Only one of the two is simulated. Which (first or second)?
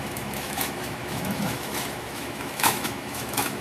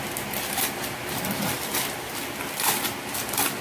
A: first